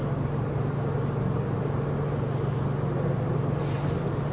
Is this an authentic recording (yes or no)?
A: yes